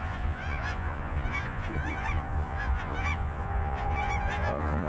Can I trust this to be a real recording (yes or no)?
no